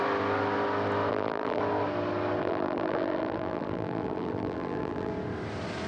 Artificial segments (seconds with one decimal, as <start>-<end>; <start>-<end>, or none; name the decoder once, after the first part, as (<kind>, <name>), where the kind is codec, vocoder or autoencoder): 1.1-1.6 (vocoder, BigVGAN v2); 2.4-5.1